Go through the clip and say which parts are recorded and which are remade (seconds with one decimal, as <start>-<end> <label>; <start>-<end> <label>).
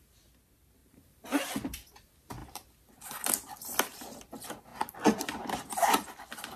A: 0.0-0.8 recorded; 0.8-1.5 remade; 1.5-6.6 recorded